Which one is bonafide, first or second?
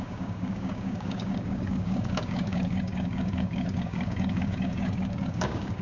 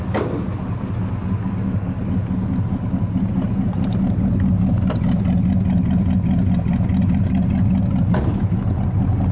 second